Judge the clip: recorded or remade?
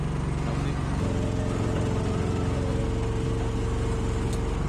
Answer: recorded